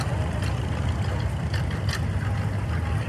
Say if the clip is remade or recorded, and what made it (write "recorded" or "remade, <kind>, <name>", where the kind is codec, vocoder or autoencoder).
recorded